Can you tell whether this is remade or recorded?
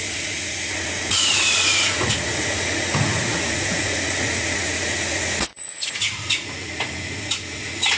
remade